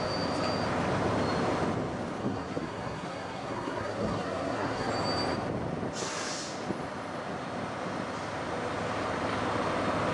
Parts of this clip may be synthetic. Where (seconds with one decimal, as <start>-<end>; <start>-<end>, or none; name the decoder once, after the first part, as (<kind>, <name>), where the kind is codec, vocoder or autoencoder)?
2.2-4.9 (codec, SNAC)